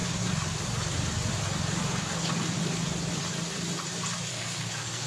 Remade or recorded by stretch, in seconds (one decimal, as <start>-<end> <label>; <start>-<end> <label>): 0.0-4.3 recorded; 4.3-5.1 remade